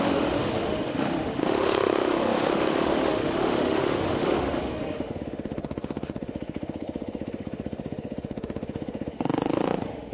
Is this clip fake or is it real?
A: fake